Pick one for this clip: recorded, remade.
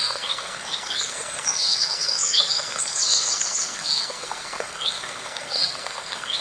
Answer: remade